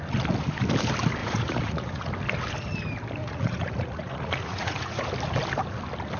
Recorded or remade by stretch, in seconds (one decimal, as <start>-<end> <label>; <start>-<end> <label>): 0.0-1.2 recorded; 1.2-2.1 remade; 2.1-3.2 recorded; 3.2-5.1 remade; 5.1-6.2 recorded